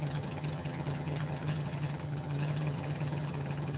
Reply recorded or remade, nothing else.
remade